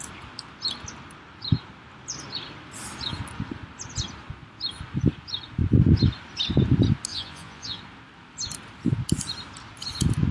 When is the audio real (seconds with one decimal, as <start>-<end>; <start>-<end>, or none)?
0.0-7.1; 7.8-10.3